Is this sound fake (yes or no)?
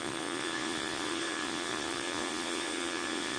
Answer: yes